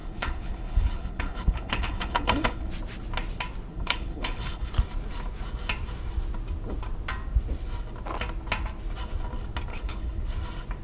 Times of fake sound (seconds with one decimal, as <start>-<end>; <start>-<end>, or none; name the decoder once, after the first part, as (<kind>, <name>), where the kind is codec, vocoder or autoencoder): 0.0-2.7 (codec, HILCodec); 3.7-4.7; 9.7-10.2